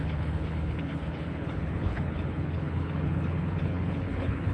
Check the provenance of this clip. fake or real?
fake